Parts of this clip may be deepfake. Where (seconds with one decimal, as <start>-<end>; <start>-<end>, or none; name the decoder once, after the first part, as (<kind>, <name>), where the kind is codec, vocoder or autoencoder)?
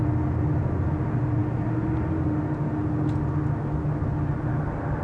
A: none